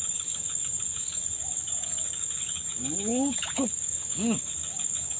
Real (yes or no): no